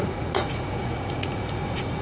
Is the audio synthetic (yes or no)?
yes